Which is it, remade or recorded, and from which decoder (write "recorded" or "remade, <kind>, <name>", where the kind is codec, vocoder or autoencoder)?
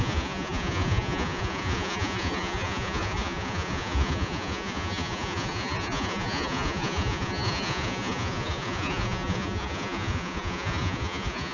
remade, vocoder, Vocos